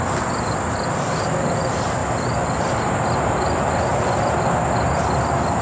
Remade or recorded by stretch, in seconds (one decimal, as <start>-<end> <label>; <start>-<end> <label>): 0.0-2.0 remade; 2.0-2.6 recorded; 2.6-3.9 remade; 3.9-4.9 recorded; 4.9-5.6 remade